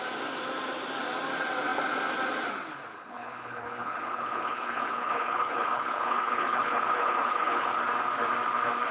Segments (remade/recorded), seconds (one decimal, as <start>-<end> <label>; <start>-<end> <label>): 0.0-2.9 recorded; 2.9-7.8 remade; 7.8-8.9 recorded